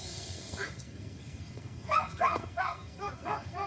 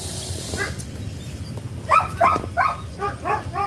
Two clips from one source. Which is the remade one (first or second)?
first